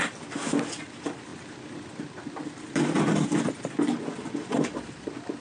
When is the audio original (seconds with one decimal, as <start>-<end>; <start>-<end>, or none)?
1.3-2.0